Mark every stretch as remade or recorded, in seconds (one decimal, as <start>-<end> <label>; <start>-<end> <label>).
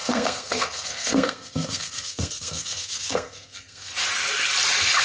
0.0-3.9 remade; 3.9-5.0 recorded